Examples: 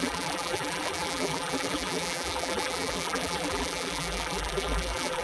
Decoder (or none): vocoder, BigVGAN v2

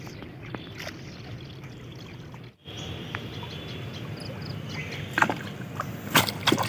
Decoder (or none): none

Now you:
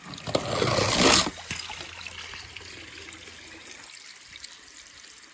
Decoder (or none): none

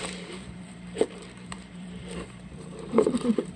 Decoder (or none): vocoder, BigVGAN v2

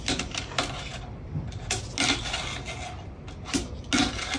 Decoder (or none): none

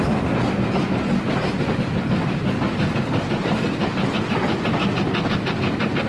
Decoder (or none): none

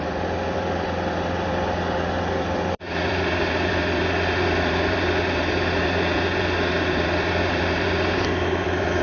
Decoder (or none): vocoder, BigVGAN v2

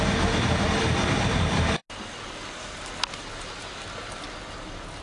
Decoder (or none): none